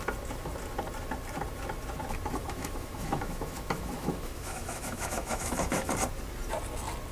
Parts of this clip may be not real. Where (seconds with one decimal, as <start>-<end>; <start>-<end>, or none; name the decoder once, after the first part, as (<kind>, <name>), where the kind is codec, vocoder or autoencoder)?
2.4-5.9 (autoencoder, DAC-VAE)